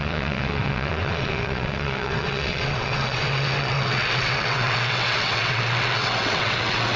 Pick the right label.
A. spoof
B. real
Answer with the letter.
A